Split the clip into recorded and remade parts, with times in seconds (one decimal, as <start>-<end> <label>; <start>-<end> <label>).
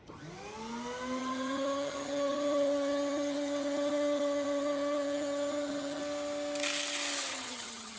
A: 0.0-1.2 recorded; 1.2-6.0 remade; 6.0-7.3 recorded; 7.3-8.0 remade